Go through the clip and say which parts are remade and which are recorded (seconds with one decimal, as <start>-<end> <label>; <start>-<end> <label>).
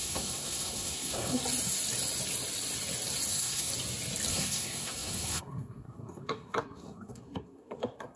0.0-1.4 remade; 1.4-3.3 recorded; 3.3-3.7 remade; 3.7-4.3 recorded; 4.3-8.2 remade